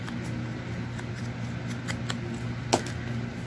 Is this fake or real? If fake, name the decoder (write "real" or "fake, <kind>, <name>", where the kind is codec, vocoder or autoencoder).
real